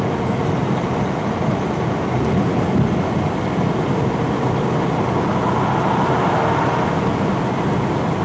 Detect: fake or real real